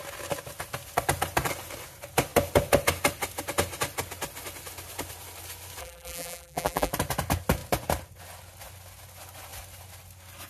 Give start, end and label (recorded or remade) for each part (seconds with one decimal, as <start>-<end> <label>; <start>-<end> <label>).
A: 0.0-5.8 recorded; 5.8-6.9 remade; 6.9-10.5 recorded